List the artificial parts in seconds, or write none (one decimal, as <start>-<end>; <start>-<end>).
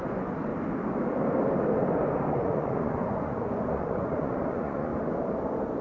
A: 0.0-0.5; 2.3-4.9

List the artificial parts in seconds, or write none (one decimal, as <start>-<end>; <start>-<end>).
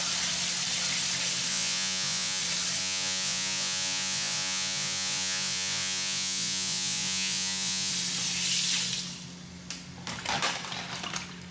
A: 1.5-2.4; 2.8-7.9